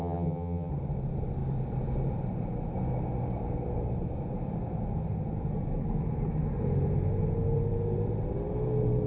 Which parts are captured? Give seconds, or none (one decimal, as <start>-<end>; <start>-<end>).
0.7-9.1